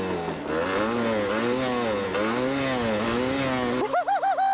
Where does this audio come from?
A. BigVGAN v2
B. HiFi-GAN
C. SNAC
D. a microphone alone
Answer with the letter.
D